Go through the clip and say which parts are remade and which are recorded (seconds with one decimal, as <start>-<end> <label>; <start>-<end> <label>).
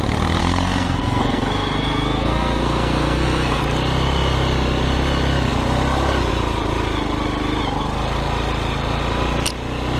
0.0-0.4 recorded; 0.4-3.6 remade; 3.6-10.0 recorded